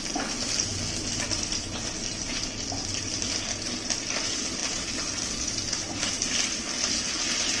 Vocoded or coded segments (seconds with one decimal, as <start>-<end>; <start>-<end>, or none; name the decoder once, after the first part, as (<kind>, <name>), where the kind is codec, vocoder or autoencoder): none